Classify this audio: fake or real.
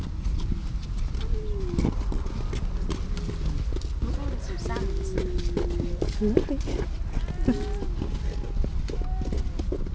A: real